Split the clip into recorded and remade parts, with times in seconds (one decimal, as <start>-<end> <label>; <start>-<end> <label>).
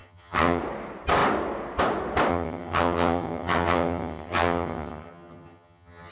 0.0-0.6 remade; 0.6-2.3 recorded; 2.3-6.1 remade